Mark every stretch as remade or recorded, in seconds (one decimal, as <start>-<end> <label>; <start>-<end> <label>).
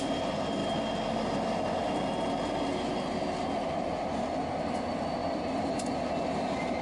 0.0-6.8 recorded